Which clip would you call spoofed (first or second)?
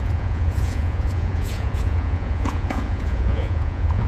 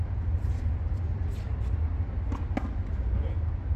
first